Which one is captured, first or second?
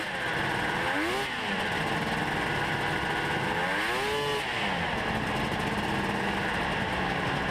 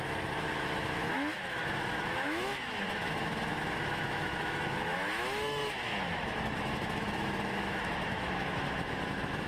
first